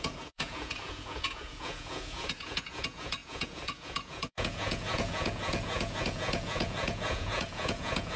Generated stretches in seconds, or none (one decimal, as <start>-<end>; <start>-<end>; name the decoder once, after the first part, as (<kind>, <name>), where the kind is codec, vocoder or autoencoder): 0.0-8.2 (vocoder, Vocos)